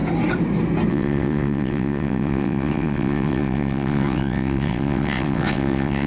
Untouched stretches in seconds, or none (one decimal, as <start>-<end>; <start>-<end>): 0.0-0.9